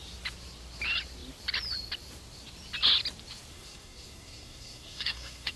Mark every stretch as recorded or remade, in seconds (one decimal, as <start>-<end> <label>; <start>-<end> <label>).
0.0-3.5 recorded; 3.5-5.6 remade